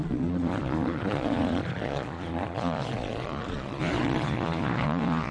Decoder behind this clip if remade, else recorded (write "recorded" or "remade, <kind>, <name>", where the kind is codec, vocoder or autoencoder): remade, vocoder, Vocos